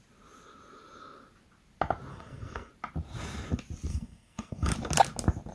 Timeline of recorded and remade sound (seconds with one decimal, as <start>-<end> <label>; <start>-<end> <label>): 0.0-2.1 recorded; 2.1-2.7 remade; 2.7-3.9 recorded; 3.9-4.7 remade; 4.7-5.5 recorded